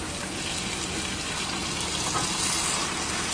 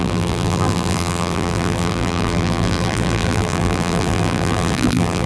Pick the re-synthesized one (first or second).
second